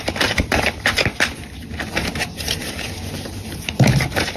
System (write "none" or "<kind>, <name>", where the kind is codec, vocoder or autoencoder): vocoder, BigVGAN v2